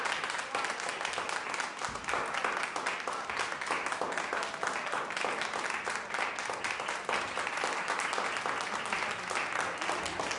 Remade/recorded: recorded